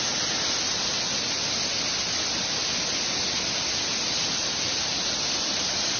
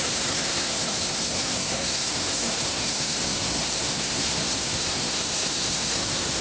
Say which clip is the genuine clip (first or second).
first